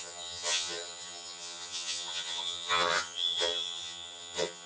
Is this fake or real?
fake